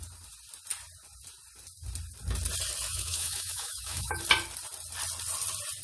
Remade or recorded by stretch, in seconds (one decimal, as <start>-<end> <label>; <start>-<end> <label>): 0.0-2.9 recorded; 2.9-4.2 remade; 4.2-5.8 recorded